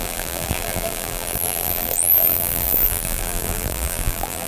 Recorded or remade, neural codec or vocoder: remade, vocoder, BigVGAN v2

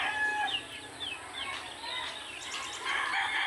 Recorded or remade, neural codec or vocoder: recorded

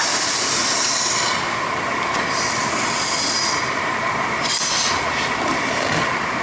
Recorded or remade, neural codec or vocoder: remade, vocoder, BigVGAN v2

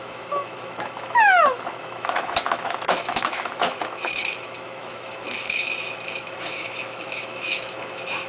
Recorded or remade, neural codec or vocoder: remade, autoencoder, DAC-VAE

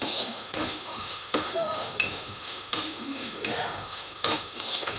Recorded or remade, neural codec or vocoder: remade, autoencoder, DAC-VAE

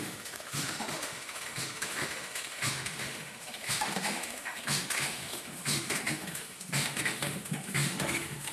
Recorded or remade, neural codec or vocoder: remade, autoencoder, DAC-VAE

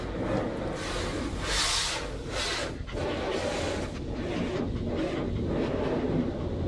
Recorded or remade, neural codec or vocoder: recorded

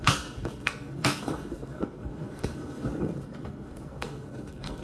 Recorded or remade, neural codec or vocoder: remade, codec, SNAC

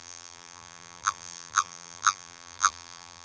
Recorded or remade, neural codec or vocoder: remade, vocoder, BigVGAN v2